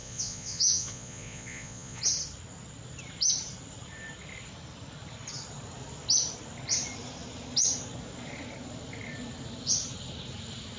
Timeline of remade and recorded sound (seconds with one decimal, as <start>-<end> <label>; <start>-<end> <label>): 0.0-2.0 remade; 2.0-10.8 recorded